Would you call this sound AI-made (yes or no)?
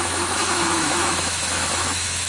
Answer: yes